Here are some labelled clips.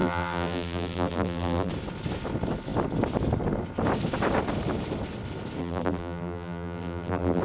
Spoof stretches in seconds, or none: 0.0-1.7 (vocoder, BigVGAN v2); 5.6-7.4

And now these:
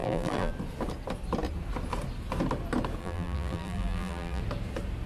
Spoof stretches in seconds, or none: 0.0-0.5 (vocoder, BigVGAN v2); 3.0-4.4

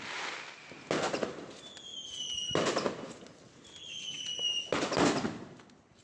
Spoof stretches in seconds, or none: none

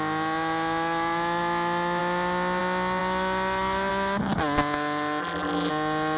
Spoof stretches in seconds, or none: 5.2-5.7 (vocoder, BigVGAN v2)

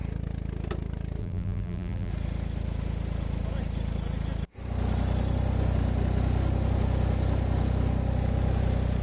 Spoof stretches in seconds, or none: 1.2-2.1 (vocoder, BigVGAN v2)

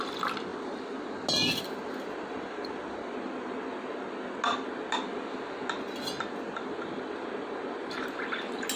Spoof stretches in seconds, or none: none